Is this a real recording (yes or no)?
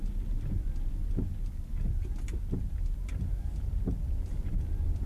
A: no